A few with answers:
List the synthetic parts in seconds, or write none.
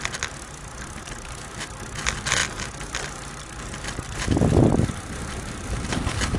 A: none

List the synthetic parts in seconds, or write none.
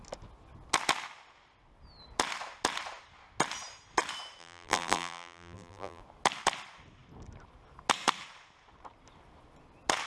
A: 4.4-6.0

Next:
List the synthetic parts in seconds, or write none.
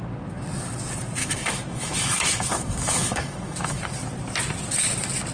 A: 1.2-3.8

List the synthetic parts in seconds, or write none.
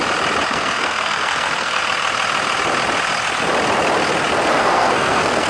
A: 0.5-1.8; 4.6-5.5